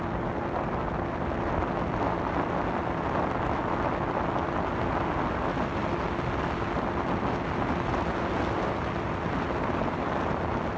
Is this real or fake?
real